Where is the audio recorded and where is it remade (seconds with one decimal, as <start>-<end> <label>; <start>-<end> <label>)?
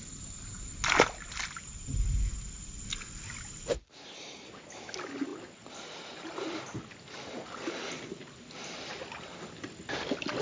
0.0-10.4 recorded